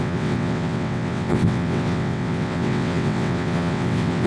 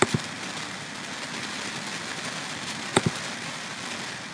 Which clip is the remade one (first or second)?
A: first